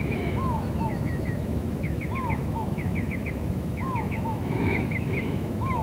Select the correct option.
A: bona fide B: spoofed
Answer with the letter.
B